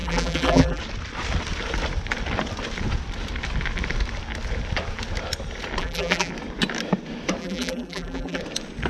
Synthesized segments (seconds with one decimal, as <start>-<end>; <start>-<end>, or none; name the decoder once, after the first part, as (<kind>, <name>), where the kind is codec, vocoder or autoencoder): 0.0-0.8 (vocoder, BigVGAN v2); 5.8-6.3; 7.4-8.4